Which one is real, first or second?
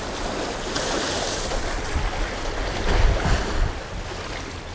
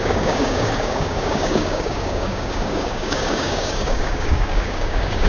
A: first